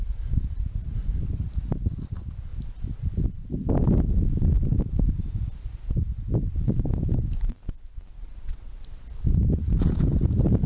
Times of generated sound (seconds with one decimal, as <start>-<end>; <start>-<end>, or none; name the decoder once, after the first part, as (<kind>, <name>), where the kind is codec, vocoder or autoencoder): 8.1-8.8 (vocoder, WaveNeXt)